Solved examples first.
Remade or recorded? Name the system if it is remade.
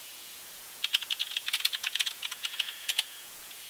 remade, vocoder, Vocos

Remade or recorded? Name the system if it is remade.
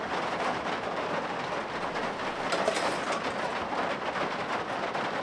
recorded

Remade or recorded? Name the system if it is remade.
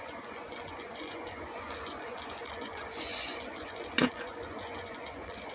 remade, vocoder, Vocos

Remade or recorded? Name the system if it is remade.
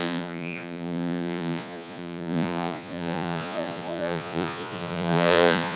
remade, vocoder, Vocos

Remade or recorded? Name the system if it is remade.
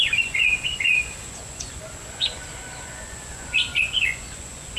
remade, vocoder, Vocos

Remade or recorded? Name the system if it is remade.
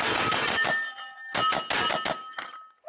recorded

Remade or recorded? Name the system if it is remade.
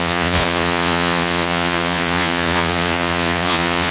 remade, vocoder, Vocos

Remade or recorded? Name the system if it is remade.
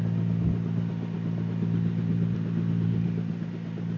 recorded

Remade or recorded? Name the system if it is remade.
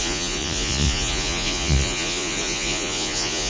remade, vocoder, Vocos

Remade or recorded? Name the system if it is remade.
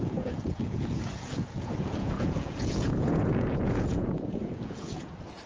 remade, vocoder, Vocos